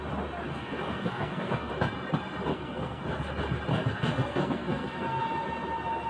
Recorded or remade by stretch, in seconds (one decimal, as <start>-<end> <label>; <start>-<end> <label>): 0.0-0.5 recorded; 0.5-1.7 remade; 1.7-2.5 recorded; 2.5-3.0 remade; 3.0-3.7 recorded; 3.7-5.2 remade; 5.2-6.1 recorded